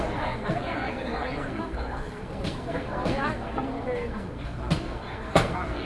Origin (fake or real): fake